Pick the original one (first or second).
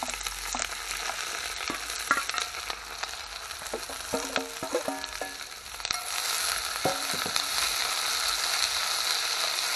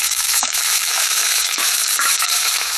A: first